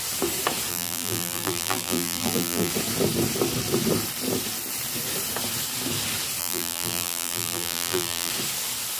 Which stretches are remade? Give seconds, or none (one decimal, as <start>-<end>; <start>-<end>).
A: 0.7-2.7; 6.4-8.3